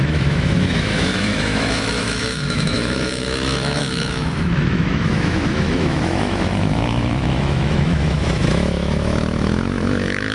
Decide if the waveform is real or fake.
fake